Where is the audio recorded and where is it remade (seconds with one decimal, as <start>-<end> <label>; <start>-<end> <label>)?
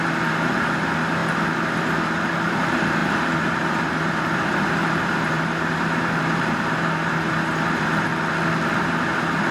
0.0-8.1 remade; 8.1-8.7 recorded; 8.7-9.5 remade